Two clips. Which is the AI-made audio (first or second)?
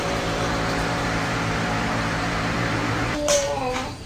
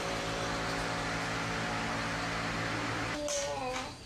first